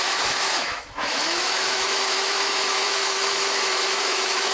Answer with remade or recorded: remade